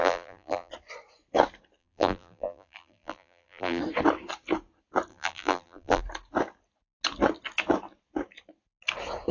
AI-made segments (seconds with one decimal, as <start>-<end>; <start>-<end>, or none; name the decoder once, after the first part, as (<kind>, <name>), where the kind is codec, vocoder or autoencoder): 0.0-0.7 (vocoder, BigVGAN v2); 1.8-3.8; 5.1-6.0